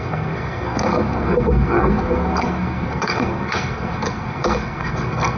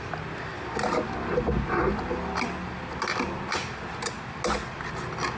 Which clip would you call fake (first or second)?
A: first